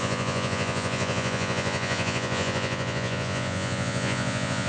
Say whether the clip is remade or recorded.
remade